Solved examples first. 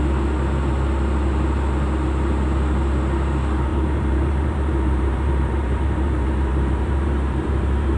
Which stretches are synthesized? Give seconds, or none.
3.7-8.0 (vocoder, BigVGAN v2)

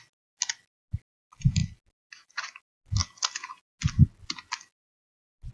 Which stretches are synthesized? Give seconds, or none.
none